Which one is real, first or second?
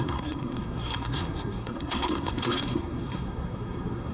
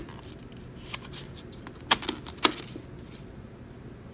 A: second